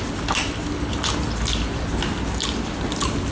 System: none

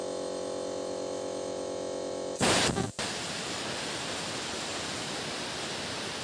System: none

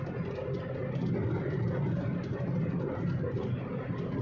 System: none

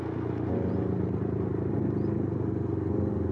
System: none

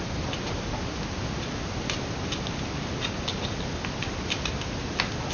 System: none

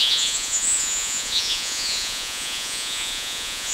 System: vocoder, Vocos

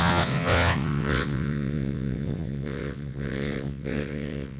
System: vocoder, WaveNeXt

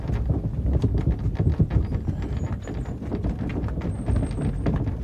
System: none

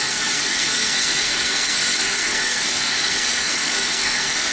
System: codec, SNAC